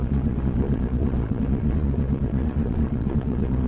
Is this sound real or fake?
fake